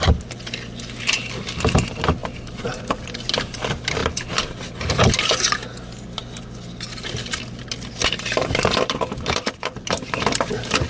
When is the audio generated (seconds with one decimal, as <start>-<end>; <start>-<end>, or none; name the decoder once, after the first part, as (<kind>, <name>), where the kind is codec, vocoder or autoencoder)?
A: 2.2-2.8 (vocoder, BigVGAN v2)